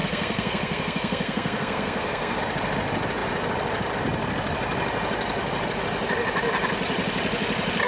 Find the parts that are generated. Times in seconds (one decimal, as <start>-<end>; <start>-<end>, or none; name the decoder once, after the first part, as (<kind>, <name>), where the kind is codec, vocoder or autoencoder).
0.0-2.4 (codec, SNAC)